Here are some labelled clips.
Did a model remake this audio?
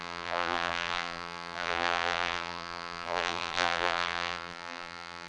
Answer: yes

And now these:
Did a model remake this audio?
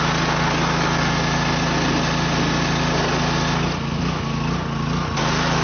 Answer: no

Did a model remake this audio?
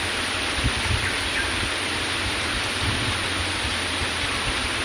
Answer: yes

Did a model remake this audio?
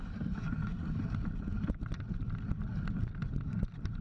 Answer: no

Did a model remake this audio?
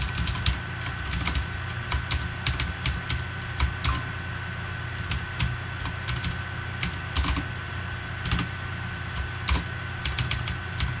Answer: no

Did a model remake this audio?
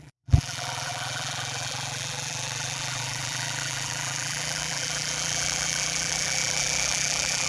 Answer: yes